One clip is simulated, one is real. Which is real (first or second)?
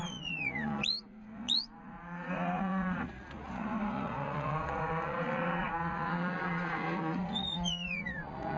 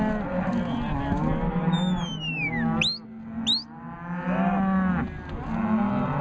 second